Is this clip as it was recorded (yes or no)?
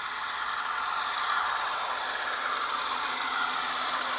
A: yes